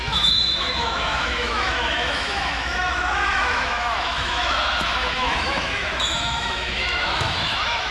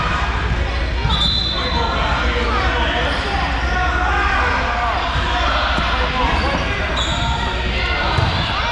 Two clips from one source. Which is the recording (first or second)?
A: second